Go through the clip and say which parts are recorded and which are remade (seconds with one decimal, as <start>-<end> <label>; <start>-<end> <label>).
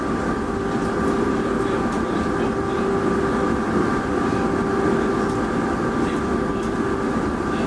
0.0-7.7 recorded